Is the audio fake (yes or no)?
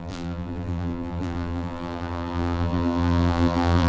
yes